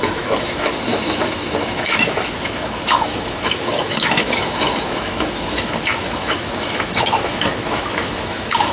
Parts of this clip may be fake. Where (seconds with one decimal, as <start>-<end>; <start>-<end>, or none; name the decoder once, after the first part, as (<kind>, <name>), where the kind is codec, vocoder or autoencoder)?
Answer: 0.0-8.7 (autoencoder, DAC-VAE)